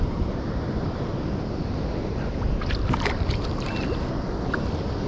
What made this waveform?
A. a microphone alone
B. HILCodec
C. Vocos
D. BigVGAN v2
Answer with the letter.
A